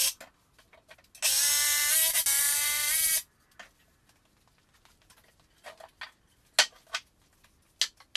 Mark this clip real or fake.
real